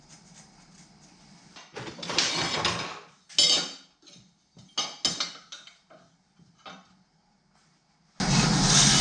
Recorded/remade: recorded